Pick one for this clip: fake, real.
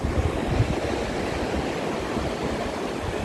real